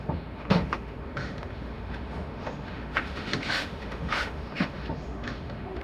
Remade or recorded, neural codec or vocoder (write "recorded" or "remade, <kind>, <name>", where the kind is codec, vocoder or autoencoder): remade, autoencoder, DAC-VAE